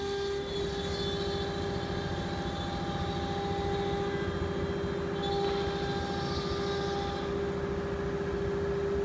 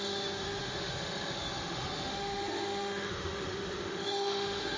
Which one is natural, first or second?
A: first